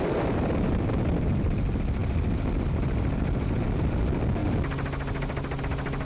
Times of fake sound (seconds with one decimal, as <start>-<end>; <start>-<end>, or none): none